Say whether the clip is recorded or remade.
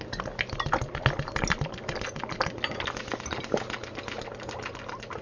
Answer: recorded